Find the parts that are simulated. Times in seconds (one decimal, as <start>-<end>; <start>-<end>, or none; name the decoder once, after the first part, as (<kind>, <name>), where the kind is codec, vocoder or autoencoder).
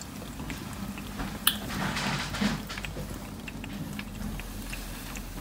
none